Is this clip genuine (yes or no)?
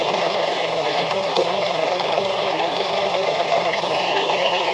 no